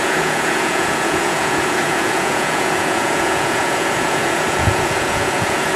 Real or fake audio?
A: fake